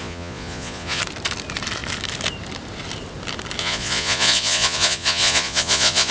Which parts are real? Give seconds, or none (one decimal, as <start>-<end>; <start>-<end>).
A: 1.0-3.6